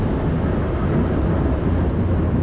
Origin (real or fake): real